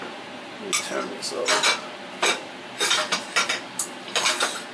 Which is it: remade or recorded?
recorded